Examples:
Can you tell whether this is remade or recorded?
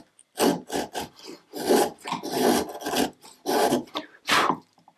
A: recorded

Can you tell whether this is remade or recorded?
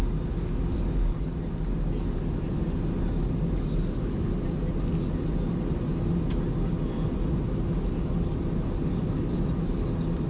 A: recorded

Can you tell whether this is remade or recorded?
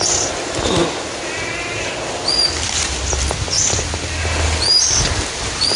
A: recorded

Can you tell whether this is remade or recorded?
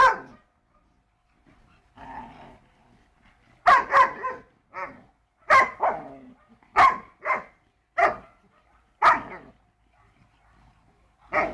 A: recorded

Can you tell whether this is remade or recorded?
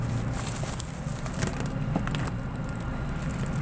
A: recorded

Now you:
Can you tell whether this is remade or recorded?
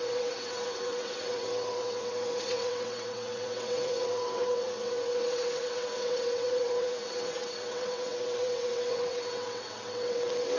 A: remade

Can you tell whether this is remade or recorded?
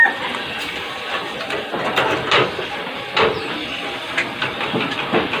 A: recorded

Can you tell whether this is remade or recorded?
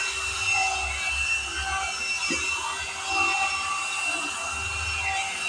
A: recorded